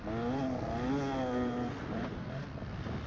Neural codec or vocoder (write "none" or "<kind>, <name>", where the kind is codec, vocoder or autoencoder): none